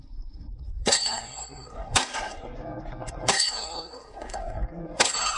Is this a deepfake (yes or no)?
yes